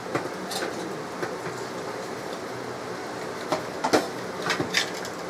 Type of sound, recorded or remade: recorded